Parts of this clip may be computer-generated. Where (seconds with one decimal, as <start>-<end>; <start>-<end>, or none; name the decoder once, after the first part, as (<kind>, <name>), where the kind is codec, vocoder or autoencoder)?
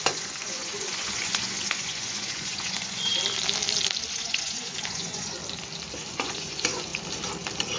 0.0-3.1 (vocoder, Vocos); 4.1-5.4; 6.1-6.9